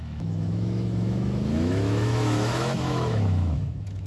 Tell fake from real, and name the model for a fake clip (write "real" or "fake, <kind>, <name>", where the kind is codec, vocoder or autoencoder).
fake, autoencoder, DAC-VAE